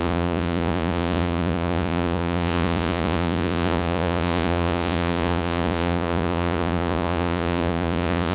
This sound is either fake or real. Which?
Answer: fake